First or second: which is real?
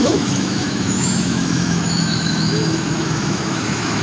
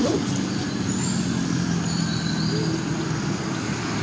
second